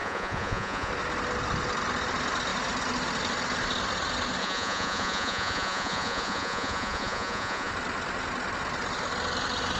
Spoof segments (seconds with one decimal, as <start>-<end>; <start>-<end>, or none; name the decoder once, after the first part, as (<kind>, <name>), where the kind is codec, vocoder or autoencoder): 0.0-0.9 (vocoder, Vocos); 4.4-7.7